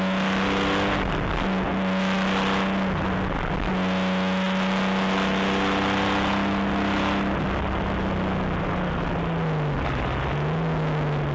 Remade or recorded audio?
recorded